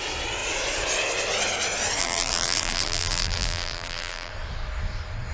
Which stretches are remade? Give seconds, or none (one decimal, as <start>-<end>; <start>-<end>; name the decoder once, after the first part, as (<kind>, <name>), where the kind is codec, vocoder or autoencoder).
2.0-4.3 (vocoder, BigVGAN v2)